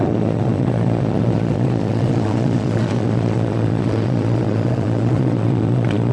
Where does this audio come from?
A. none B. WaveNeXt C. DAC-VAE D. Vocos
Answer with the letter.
D